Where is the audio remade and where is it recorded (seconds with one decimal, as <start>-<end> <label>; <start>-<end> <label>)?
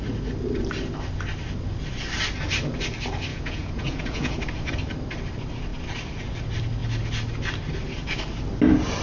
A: 0.0-3.3 recorded; 3.3-4.3 remade; 4.3-9.0 recorded